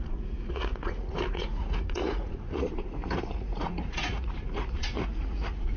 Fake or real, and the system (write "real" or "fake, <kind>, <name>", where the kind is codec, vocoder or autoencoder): fake, vocoder, Vocos